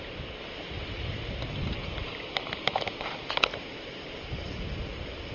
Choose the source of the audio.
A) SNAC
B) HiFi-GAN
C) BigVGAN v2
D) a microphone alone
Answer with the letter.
D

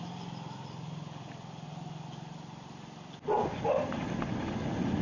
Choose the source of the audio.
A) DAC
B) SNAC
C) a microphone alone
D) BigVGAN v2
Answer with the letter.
C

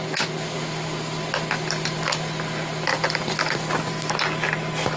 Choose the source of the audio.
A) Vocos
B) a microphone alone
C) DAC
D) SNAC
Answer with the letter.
B